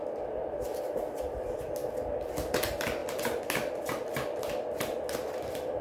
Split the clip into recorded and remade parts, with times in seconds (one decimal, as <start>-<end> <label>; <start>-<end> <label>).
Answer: 0.0-5.8 recorded